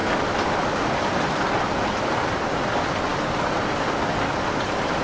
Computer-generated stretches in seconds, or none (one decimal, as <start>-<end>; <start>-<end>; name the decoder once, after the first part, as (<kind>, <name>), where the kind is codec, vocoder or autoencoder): none